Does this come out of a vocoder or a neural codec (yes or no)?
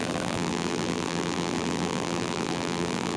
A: yes